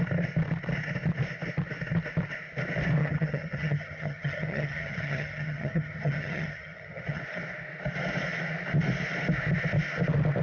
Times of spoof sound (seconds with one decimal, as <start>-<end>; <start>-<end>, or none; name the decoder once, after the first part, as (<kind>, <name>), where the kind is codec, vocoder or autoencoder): 3.0-7.2 (vocoder, HiFi-GAN)